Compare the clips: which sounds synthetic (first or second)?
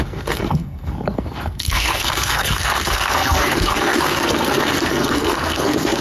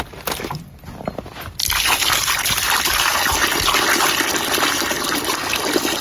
first